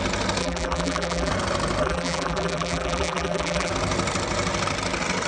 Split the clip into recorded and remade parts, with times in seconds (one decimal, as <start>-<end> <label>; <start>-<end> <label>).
0.0-0.4 recorded; 0.4-1.3 remade; 1.3-1.8 recorded; 1.8-3.7 remade; 3.7-5.3 recorded